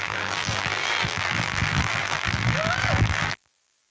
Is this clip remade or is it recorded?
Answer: remade